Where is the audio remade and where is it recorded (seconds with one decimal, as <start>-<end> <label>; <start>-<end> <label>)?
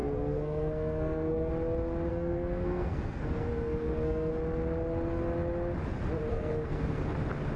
0.0-1.5 remade; 1.5-2.1 recorded; 2.1-4.3 remade; 4.3-6.3 recorded; 6.3-7.0 remade; 7.0-7.6 recorded